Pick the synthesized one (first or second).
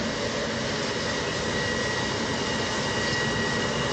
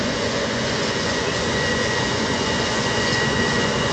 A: second